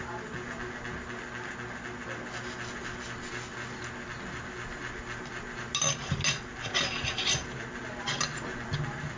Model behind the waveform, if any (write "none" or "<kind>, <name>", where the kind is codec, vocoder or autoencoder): none